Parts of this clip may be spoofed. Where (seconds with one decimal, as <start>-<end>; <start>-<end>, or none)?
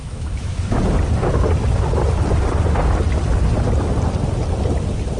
0.0-0.8